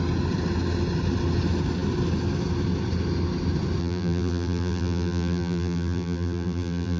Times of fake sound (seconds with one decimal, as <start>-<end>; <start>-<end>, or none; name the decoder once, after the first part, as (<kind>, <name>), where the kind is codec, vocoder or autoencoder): 3.8-7.0 (vocoder, BigVGAN v2)